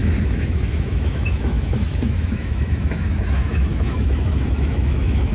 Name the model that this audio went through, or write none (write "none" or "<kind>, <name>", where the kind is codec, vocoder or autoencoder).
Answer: autoencoder, DAC-VAE